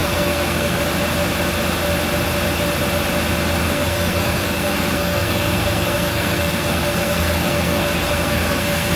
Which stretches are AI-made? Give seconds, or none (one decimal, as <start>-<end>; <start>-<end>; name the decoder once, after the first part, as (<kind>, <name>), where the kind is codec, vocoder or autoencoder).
0.0-0.8 (codec, SNAC); 3.6-9.0